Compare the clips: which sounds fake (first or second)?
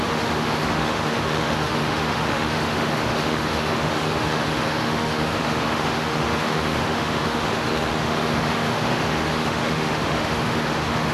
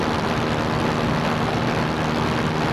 first